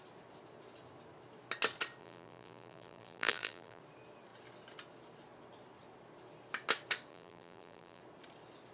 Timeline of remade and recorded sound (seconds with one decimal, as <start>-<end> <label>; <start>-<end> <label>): 0.0-2.0 recorded; 2.0-3.8 remade; 3.8-7.1 recorded; 7.1-8.0 remade; 8.0-8.7 recorded